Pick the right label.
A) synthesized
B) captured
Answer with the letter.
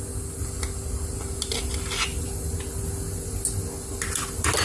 B